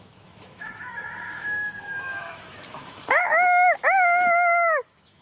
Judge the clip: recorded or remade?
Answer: remade